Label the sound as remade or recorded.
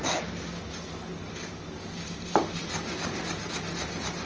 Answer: recorded